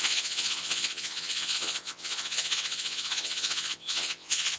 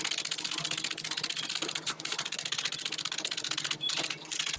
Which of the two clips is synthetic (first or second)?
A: first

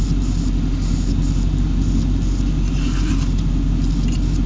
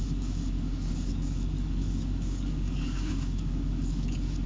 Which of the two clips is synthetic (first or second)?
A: second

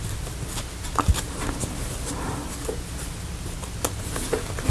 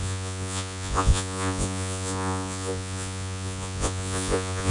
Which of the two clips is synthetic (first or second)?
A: second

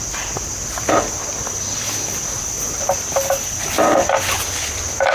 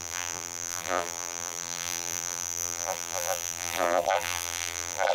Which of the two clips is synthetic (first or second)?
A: second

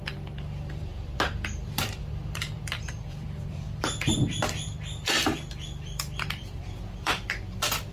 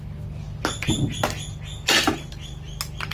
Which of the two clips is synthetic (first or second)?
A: first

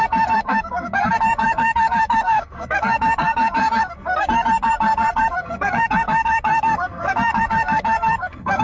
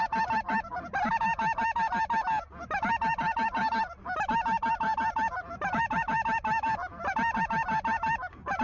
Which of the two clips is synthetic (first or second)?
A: first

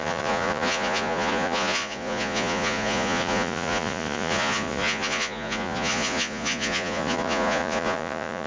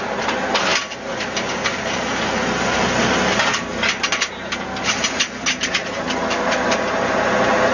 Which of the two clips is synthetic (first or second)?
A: first